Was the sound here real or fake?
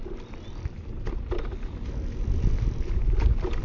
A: real